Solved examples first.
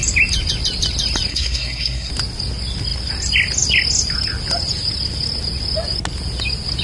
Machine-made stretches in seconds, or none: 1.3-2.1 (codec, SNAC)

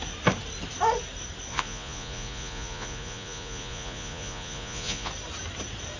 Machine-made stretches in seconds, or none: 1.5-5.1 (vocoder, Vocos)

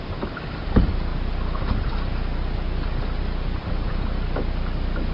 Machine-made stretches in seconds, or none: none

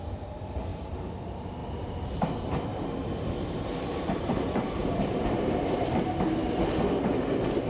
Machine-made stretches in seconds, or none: 2.7-5.5 (vocoder, BigVGAN v2)

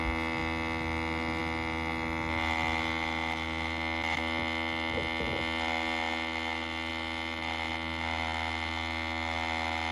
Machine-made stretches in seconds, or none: none

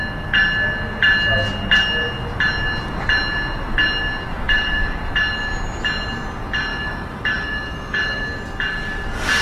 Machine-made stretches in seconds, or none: 4.3-5.0 (autoencoder, DAC-VAE); 6.7-8.2

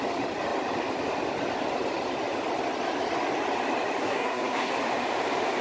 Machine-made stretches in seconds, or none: 4.0-4.7 (codec, SNAC)